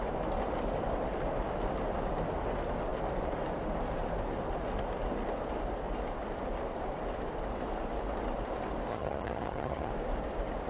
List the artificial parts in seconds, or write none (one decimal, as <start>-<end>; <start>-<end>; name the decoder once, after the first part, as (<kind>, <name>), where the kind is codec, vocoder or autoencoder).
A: 8.9-9.9 (vocoder, HiFi-GAN)